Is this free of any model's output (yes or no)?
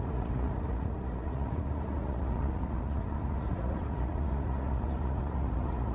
no